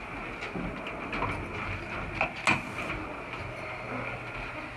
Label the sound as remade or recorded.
recorded